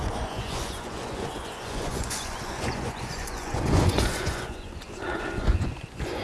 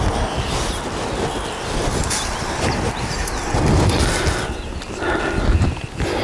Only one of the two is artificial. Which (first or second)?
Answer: first